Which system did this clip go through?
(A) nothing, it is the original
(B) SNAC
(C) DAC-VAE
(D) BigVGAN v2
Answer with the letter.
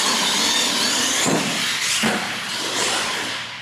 A